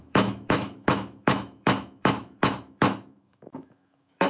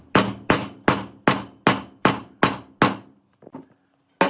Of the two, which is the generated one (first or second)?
first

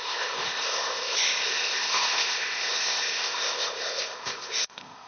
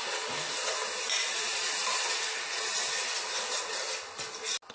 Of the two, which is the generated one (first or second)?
first